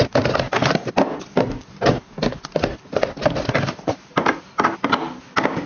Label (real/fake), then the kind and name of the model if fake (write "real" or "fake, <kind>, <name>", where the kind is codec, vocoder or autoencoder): real